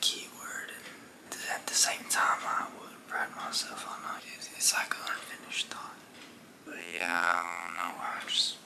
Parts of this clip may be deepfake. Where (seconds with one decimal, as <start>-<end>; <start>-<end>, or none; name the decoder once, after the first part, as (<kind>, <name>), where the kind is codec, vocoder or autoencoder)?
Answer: 6.8-7.9 (vocoder, BigVGAN v2)